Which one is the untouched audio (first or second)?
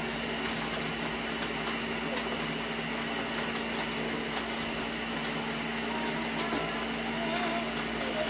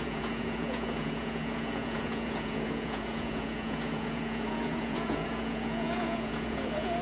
first